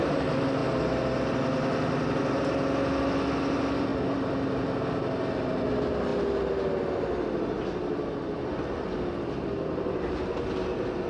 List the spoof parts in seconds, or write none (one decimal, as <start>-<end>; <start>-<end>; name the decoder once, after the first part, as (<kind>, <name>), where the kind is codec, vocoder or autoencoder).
none